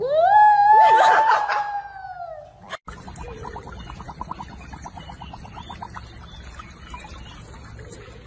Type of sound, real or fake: real